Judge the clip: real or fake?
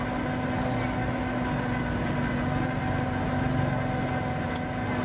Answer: real